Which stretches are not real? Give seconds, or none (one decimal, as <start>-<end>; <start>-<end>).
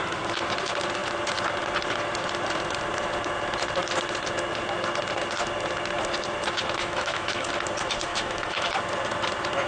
6.8-7.5; 8.1-8.7